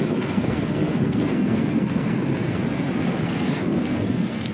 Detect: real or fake fake